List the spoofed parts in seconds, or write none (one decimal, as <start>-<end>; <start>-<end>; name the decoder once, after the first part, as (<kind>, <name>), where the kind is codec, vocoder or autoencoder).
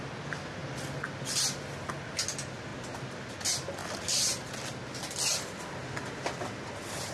none